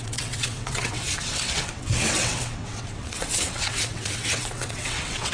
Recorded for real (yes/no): no